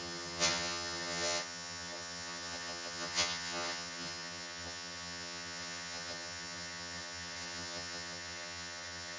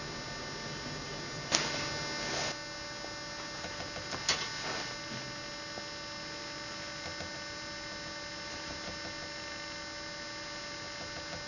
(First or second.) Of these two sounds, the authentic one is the second